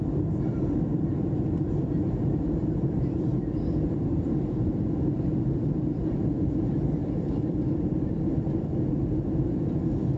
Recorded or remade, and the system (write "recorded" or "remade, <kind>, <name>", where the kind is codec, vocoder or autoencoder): remade, vocoder, BigVGAN v2